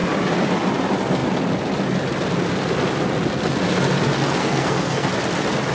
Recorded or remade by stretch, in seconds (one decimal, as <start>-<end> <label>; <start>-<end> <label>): 0.0-4.4 recorded; 4.4-5.1 remade; 5.1-5.7 recorded